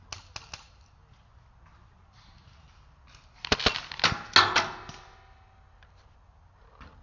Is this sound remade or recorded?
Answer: recorded